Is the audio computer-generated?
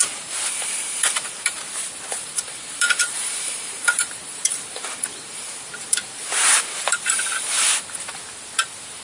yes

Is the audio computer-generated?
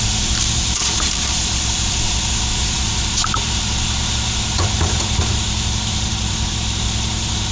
yes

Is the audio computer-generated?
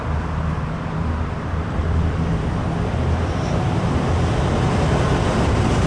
yes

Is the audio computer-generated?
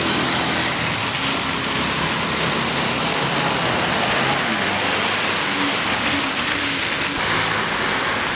no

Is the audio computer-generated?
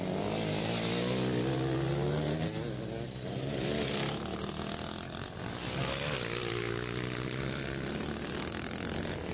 no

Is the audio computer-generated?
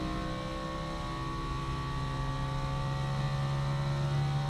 no